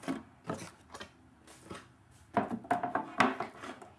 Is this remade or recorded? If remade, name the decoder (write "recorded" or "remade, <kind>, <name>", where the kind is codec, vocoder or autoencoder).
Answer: recorded